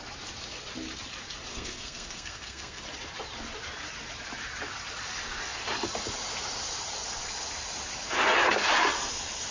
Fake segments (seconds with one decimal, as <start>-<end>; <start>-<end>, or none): 1.5-2.8